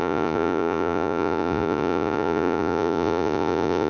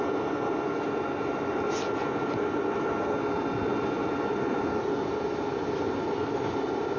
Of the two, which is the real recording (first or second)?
second